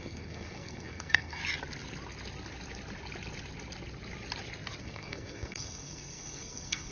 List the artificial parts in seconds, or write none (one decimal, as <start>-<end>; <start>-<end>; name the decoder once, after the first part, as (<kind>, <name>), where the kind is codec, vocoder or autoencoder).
0.0-1.4 (codec, SNAC); 4.8-6.9